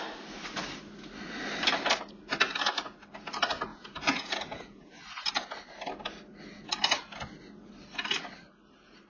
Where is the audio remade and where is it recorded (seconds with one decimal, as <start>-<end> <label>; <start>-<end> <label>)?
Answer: 0.0-3.7 recorded; 3.7-4.9 remade; 4.9-9.1 recorded